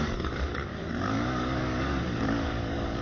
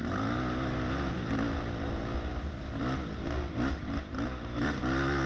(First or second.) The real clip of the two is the second